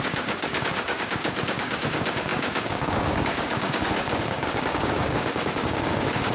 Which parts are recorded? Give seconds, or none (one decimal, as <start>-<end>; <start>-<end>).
none